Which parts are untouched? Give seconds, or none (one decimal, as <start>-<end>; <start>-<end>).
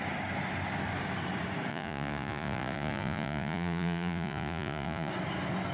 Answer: 0.0-1.7; 5.1-5.7